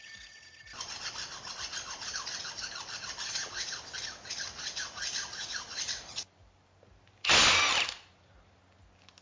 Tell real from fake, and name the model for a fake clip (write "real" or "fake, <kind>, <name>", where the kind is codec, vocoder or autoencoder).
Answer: real